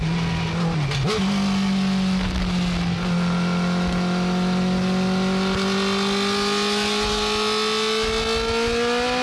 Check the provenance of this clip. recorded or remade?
recorded